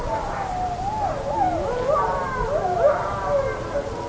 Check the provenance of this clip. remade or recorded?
recorded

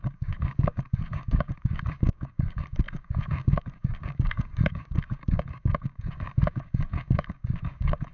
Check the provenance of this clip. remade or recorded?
remade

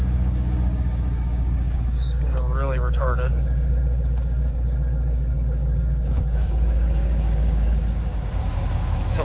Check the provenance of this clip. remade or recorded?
remade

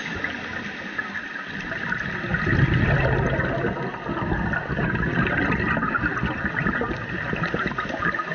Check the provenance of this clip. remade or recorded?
recorded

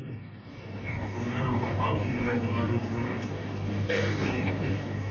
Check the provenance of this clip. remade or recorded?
remade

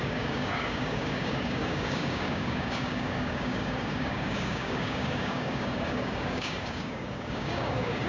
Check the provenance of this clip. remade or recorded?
remade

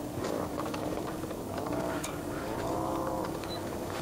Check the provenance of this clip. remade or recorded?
remade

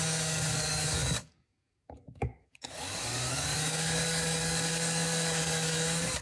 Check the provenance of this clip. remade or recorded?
remade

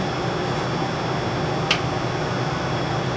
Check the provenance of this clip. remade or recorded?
recorded